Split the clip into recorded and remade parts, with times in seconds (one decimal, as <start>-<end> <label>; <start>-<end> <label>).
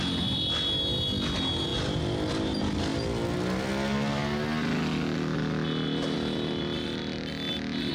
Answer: 0.0-7.9 recorded